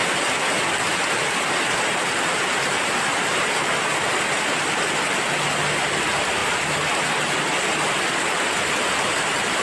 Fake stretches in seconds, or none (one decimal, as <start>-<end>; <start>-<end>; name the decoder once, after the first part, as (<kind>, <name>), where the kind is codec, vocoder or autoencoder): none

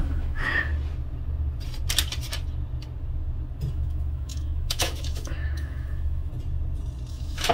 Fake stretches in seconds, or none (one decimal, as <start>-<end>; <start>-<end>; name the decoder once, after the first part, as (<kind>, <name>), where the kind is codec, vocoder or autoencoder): 0.0-0.7 (autoencoder, DAC-VAE); 3.7-6.3; 7.1-7.5

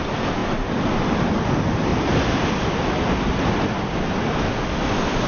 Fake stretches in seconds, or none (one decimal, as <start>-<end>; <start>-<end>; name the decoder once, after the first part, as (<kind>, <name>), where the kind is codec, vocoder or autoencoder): 0.4-1.3 (vocoder, BigVGAN v2)

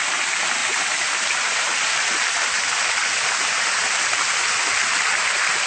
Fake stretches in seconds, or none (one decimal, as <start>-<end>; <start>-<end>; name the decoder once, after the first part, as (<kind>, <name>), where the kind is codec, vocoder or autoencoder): 0.6-2.4 (vocoder, BigVGAN v2); 3.0-3.8